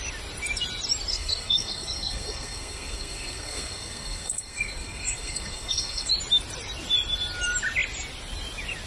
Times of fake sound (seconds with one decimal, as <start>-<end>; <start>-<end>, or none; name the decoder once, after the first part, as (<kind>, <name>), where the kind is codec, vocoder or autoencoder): 1.1-6.1 (codec, SNAC)